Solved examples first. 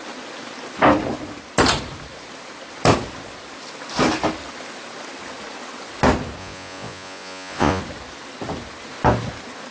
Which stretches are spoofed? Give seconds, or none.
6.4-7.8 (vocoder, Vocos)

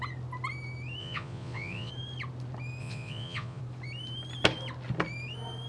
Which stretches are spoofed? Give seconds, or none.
1.0-1.9 (vocoder, Vocos); 2.8-3.6

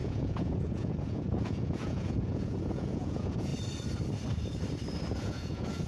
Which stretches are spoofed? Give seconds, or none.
0.0-3.5 (vocoder, Vocos); 5.1-5.9

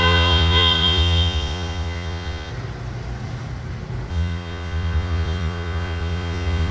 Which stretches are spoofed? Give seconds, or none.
0.0-2.5 (vocoder, Vocos); 4.1-6.7

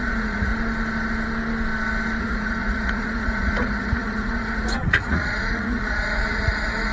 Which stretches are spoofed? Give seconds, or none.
0.0-0.5 (vocoder, Vocos); 2.2-6.9

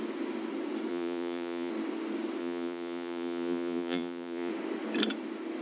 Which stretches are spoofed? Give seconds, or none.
0.9-1.7 (vocoder, Vocos); 2.4-4.5

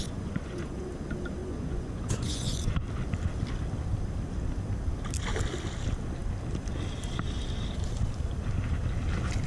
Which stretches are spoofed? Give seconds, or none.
0.0-0.9 (vocoder, Vocos); 1.4-2.7